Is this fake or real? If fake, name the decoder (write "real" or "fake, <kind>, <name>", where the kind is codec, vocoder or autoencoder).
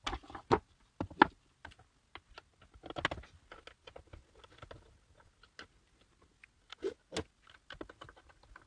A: real